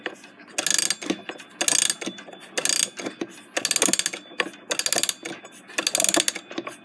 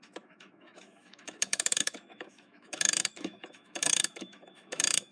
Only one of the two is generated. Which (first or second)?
second